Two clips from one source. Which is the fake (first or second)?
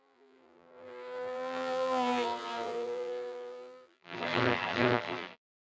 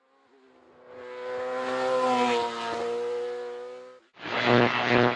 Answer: first